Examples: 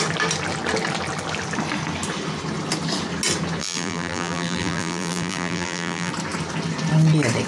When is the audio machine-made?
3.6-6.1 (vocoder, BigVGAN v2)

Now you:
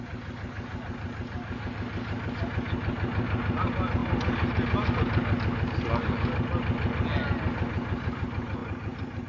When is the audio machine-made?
none

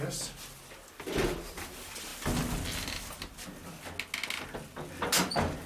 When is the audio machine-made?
none

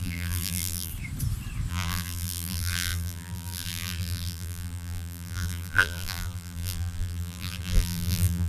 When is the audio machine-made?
0.0-0.9 (vocoder, BigVGAN v2); 1.7-8.5

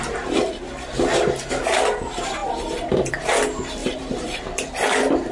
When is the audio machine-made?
2.4-3.1 (vocoder, BigVGAN v2); 3.8-5.3

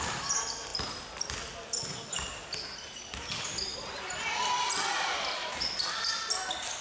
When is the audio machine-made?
3.7-5.5 (vocoder, BigVGAN v2)

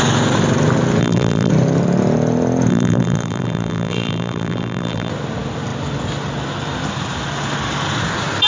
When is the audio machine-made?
1.0-1.5 (vocoder, BigVGAN v2); 2.7-5.1